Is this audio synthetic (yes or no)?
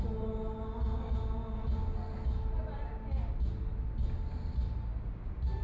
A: no